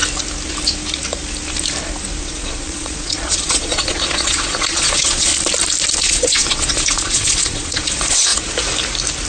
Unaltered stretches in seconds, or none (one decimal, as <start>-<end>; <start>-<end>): 0.0-2.2; 5.3-6.0; 8.3-9.3